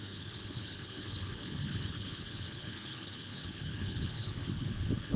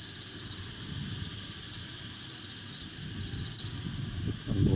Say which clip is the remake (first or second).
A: first